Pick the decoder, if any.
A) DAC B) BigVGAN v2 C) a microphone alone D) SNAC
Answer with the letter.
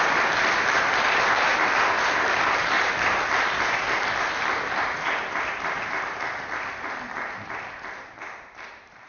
B